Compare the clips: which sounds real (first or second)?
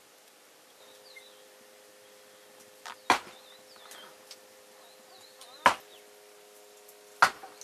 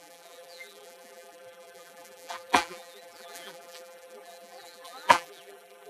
first